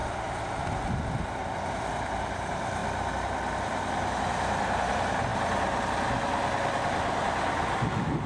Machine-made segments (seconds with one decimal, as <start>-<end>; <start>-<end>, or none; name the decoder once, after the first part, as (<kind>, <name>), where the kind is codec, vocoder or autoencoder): none